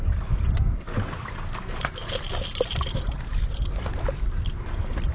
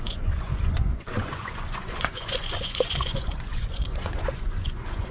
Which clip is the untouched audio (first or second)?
first